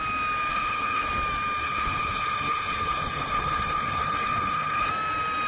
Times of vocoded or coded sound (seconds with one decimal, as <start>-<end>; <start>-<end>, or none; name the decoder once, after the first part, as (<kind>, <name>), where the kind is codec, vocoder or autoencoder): 0.5-1.1 (codec, HILCodec); 1.6-4.9